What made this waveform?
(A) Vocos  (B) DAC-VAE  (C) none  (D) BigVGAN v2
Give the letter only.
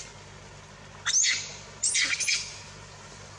C